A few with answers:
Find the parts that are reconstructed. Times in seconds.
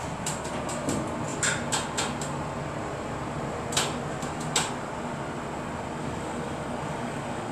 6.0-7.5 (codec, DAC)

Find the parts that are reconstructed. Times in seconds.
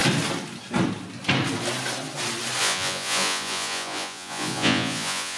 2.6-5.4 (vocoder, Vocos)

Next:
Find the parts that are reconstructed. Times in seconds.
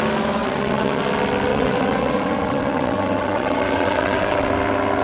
0.4-1.0 (vocoder, WaveNeXt); 1.5-4.5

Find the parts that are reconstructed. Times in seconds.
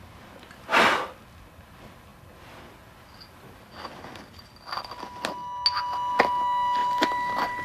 0.7-1.2 (vocoder, BigVGAN v2); 6.8-7.6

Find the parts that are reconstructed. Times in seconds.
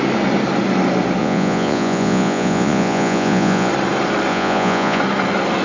1.2-3.7 (vocoder, Vocos); 4.3-5.0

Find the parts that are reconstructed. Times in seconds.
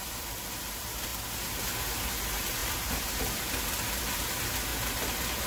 none